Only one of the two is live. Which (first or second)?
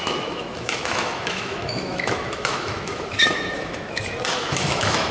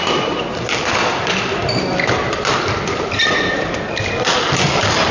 second